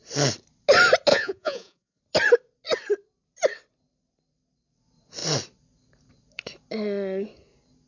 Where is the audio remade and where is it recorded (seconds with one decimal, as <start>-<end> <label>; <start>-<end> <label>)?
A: 0.0-1.1 recorded; 1.1-2.0 remade; 2.0-7.9 recorded